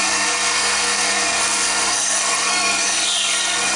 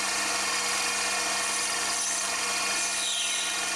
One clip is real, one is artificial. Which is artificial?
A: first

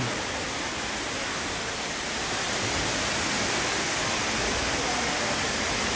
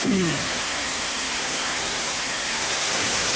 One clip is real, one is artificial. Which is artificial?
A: second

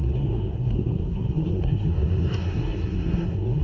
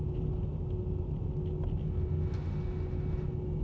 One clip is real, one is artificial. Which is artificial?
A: first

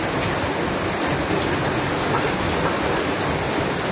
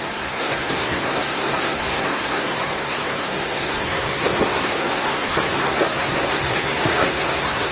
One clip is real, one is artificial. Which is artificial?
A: second